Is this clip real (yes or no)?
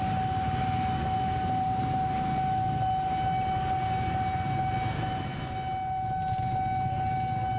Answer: yes